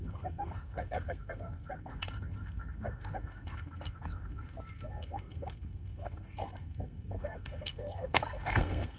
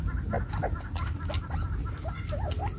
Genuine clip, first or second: second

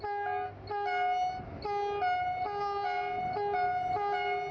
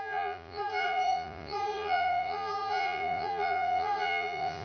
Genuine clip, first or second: first